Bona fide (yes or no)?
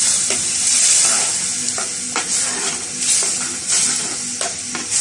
yes